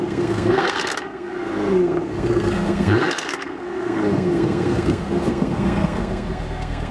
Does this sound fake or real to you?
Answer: fake